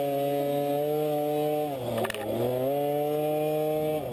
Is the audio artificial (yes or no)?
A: no